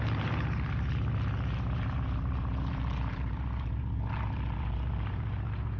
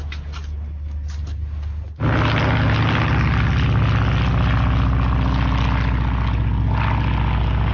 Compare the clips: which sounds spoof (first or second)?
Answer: first